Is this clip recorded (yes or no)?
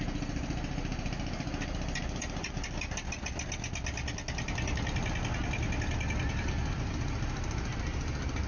yes